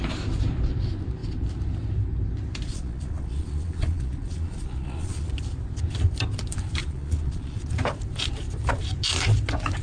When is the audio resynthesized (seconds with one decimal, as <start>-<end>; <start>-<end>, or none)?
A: 2.7-5.3; 6.8-7.7